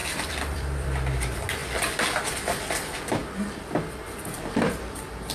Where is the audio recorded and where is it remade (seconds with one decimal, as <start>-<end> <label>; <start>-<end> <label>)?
0.0-1.1 remade; 1.1-5.3 recorded